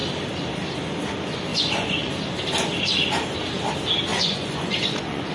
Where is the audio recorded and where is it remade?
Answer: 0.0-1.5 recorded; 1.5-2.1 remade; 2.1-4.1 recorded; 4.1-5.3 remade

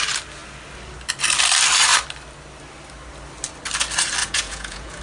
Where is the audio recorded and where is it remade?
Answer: 0.0-4.2 recorded; 4.2-5.0 remade

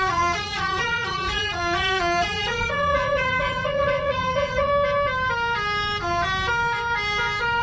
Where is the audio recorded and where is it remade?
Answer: 0.0-4.7 remade; 4.7-7.6 recorded

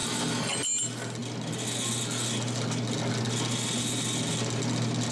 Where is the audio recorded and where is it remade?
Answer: 0.0-5.1 recorded

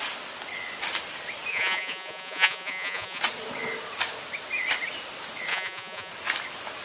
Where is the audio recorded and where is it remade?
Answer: 0.0-1.5 recorded; 1.5-3.2 remade; 3.2-5.5 recorded; 5.5-6.1 remade; 6.1-6.8 recorded

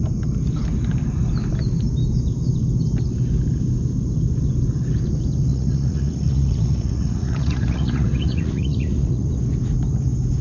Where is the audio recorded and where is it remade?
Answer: 0.0-5.5 recorded; 5.5-9.3 remade; 9.3-10.4 recorded